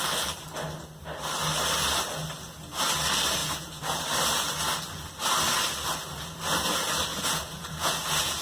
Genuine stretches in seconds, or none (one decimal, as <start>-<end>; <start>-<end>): 0.0-3.4; 4.0-7.1